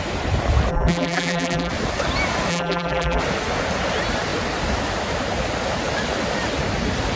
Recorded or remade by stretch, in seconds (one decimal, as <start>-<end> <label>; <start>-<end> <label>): 0.0-0.7 recorded; 0.7-1.7 remade; 1.7-2.5 recorded; 2.5-3.2 remade; 3.2-7.2 recorded